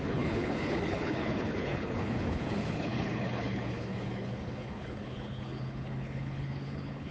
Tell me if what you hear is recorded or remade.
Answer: remade